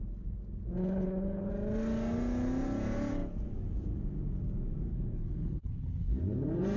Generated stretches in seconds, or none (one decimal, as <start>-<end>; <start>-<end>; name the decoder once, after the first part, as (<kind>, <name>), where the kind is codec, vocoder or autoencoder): 0.8-1.5 (codec, HILCodec); 4.9-6.2